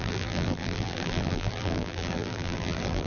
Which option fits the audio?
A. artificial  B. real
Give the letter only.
A